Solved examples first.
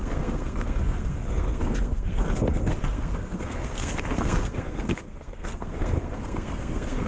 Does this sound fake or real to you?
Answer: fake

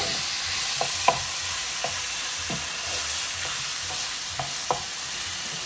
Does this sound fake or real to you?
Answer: real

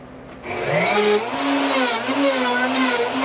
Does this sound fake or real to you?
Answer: real